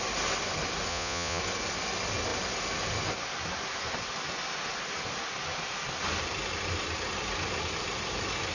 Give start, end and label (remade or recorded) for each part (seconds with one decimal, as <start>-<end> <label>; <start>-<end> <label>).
0.0-0.9 recorded; 0.9-1.4 remade; 1.4-8.5 recorded

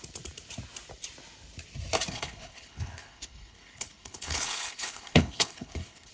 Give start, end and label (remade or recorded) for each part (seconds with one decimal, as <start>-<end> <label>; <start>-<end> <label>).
0.0-2.1 recorded; 2.1-6.1 remade